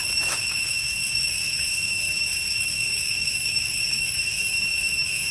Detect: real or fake fake